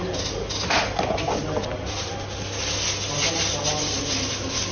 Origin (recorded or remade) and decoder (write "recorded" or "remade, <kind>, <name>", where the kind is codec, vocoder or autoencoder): recorded